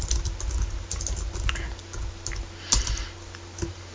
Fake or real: real